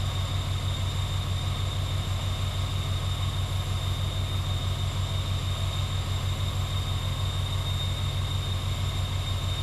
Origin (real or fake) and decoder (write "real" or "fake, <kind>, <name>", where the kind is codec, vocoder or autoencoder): real